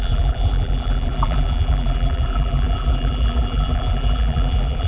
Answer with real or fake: fake